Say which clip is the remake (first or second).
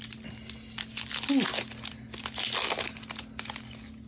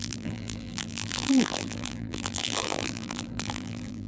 second